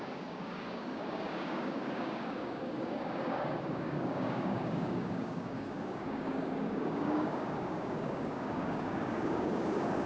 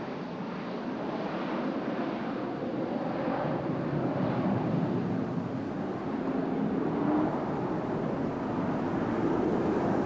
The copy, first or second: first